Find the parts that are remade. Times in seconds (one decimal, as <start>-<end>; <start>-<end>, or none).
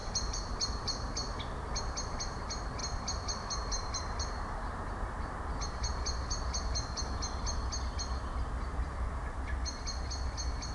0.0-1.8; 2.8-4.8